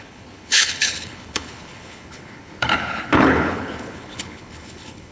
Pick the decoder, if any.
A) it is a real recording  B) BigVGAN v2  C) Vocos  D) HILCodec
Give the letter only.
D